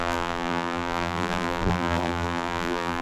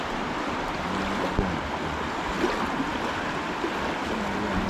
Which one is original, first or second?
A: second